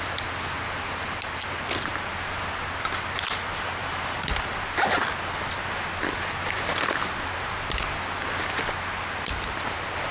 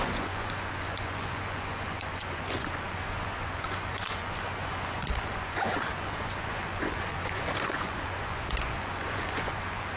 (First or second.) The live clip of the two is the first